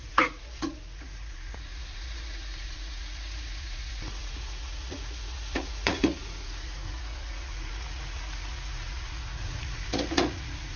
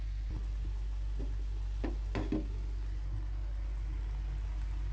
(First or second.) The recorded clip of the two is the second